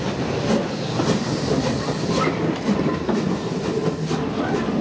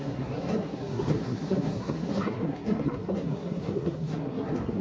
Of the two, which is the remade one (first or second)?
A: second